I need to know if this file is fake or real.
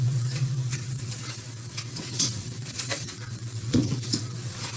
fake